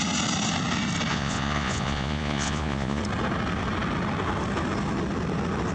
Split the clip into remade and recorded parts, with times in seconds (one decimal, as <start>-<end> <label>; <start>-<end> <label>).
0.0-1.1 recorded; 1.1-3.0 remade; 3.0-5.7 recorded